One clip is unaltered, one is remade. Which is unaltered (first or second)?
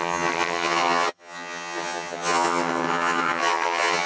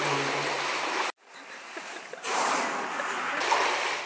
second